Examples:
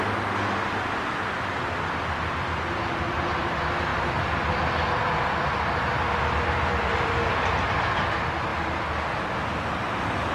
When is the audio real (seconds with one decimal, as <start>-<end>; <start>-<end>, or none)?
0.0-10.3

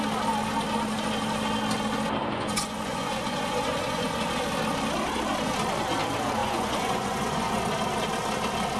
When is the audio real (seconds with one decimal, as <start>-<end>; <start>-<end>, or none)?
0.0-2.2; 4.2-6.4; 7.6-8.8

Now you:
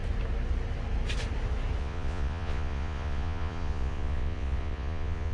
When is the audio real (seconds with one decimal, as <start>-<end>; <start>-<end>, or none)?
0.0-1.8